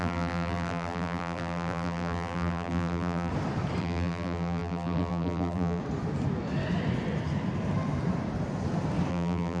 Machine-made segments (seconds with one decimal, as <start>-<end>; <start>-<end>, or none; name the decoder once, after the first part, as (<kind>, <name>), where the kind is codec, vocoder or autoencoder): 0.0-3.3 (vocoder, BigVGAN v2); 3.8-5.8; 9.1-9.6